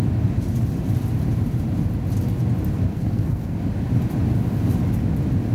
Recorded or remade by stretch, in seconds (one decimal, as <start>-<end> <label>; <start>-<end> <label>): 0.0-2.9 recorded; 2.9-3.6 remade; 3.6-5.5 recorded